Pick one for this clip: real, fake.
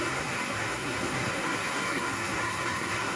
fake